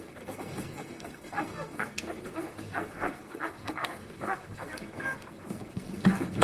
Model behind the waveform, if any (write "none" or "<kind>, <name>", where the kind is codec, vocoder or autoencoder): codec, SNAC